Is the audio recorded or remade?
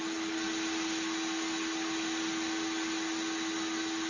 recorded